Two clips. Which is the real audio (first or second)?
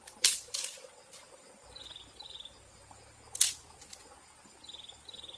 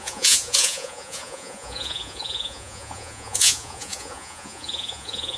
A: first